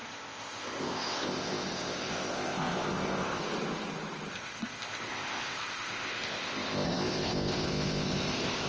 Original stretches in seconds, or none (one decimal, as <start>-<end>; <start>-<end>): 3.4-4.3